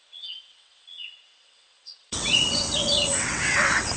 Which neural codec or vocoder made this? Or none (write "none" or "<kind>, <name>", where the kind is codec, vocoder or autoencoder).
vocoder, WaveNeXt